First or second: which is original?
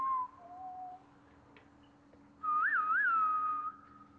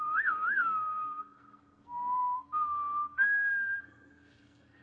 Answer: first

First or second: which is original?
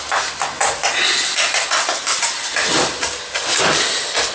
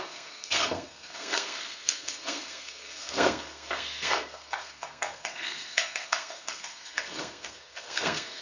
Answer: first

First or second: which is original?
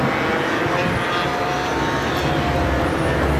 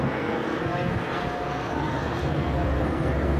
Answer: first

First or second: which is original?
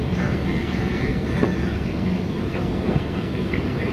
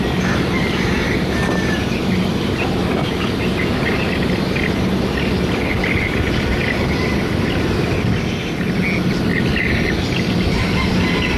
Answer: second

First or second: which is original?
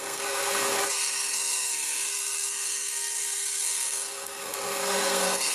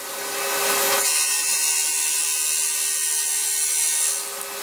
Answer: second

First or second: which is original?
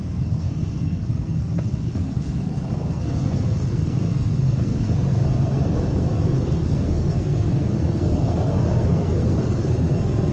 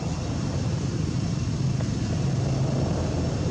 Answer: second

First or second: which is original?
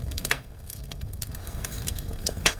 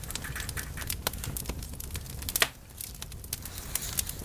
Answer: second